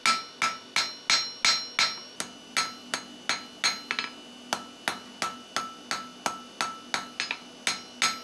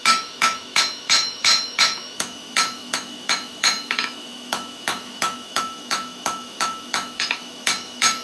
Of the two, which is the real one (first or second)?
first